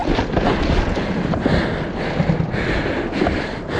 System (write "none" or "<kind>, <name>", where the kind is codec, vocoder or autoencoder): none